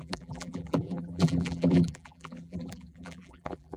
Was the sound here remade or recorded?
remade